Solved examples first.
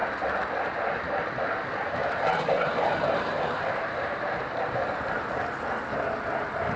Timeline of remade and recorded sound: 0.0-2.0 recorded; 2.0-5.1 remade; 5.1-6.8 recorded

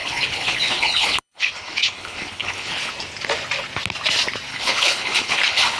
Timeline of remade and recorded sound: 0.0-2.9 remade; 2.9-4.5 recorded; 4.5-5.8 remade

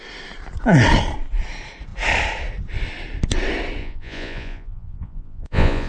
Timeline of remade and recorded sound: 0.0-3.8 recorded; 3.8-5.9 remade